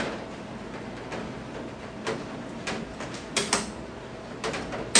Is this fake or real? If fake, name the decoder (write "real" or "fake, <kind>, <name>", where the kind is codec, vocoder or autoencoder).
real